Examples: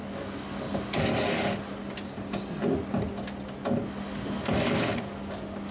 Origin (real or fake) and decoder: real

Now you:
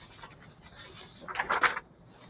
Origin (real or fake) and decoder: real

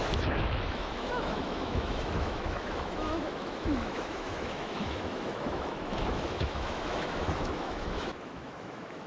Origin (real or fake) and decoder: fake, autoencoder, DAC-VAE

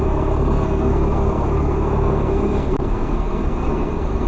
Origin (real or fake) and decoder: fake, codec, SNAC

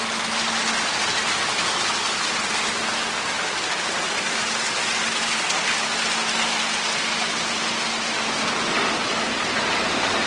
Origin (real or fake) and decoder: real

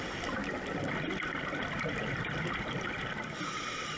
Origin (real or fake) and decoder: real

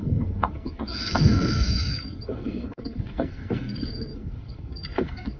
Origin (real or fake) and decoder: fake, codec, SNAC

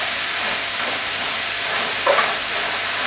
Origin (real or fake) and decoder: real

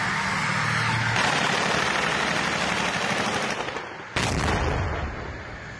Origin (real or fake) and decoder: real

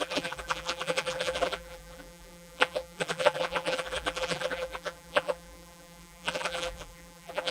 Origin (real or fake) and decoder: fake, vocoder, BigVGAN v2